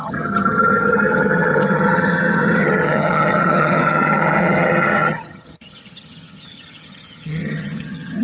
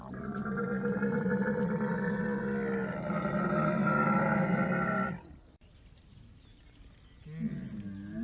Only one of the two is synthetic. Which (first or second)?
first